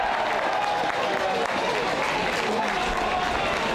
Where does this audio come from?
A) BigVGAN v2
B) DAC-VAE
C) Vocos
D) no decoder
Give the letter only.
D